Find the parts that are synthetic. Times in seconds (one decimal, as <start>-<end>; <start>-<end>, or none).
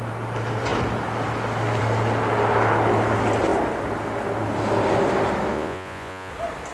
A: 5.5-6.3